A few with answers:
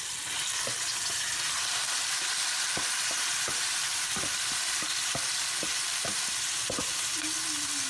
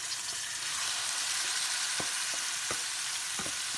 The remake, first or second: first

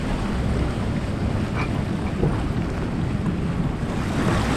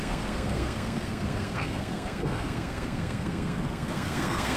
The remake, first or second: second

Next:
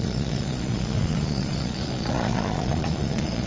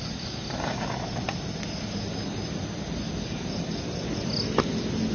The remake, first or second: first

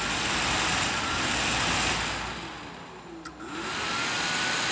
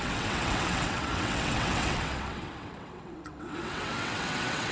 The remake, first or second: second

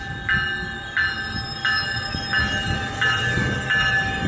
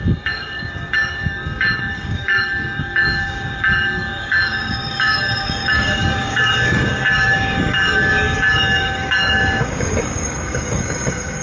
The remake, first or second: second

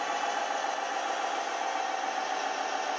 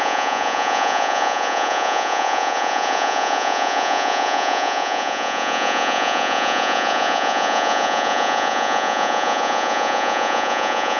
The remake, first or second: second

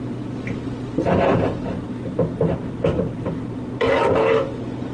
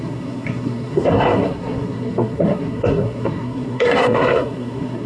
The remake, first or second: second